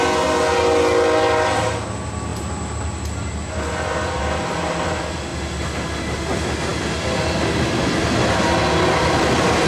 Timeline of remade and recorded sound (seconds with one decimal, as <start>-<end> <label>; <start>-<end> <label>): 0.0-9.7 recorded